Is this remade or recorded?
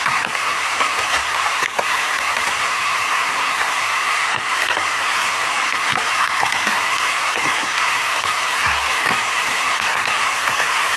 remade